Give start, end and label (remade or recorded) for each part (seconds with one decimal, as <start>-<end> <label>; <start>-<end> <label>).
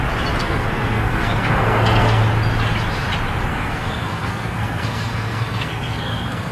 0.0-0.4 recorded; 0.4-2.2 remade; 2.2-3.5 recorded; 3.5-6.5 remade